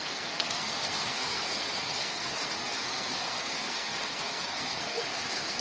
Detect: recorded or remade remade